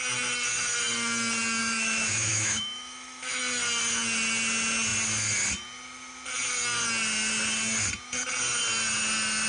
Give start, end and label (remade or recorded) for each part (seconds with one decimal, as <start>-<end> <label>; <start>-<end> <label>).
0.0-1.6 recorded; 1.6-3.4 remade; 3.4-9.5 recorded